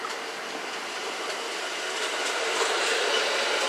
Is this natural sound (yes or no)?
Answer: yes